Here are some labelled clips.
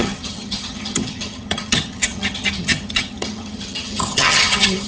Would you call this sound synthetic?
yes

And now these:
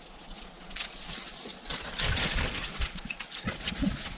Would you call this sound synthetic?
yes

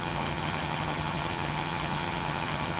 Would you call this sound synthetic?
yes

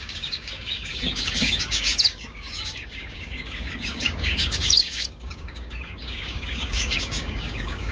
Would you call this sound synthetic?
yes